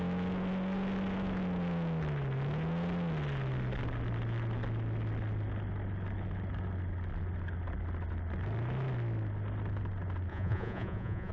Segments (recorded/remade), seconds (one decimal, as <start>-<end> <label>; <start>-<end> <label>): 0.0-10.3 recorded; 10.3-11.3 remade